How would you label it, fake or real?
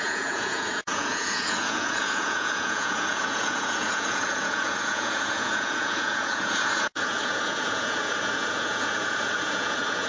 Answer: fake